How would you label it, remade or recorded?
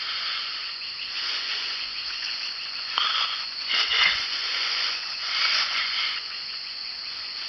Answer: remade